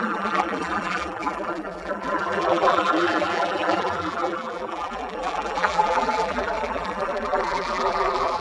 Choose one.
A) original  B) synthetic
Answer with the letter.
B